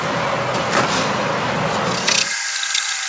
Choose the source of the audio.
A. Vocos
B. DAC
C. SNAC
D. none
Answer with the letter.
D